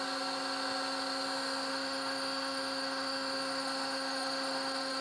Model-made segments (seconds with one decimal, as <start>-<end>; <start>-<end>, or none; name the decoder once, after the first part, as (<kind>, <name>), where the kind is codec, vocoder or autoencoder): 1.7-5.0 (autoencoder, DAC-VAE)